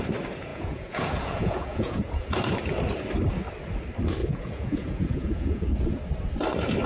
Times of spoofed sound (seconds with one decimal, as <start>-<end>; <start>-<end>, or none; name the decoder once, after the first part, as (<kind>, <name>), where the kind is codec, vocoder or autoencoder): 0.5-2.3 (vocoder, Vocos); 4.2-6.0